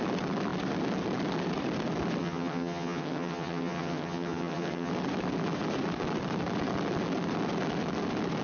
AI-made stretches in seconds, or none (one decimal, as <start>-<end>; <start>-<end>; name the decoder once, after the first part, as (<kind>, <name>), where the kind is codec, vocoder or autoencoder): 2.2-4.9 (vocoder, HiFi-GAN)